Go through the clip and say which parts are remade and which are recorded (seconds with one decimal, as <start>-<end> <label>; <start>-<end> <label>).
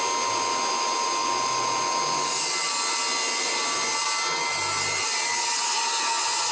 0.0-6.5 recorded